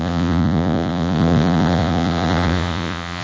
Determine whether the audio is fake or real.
fake